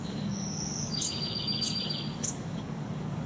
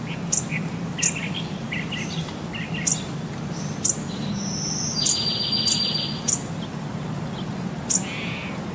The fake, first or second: first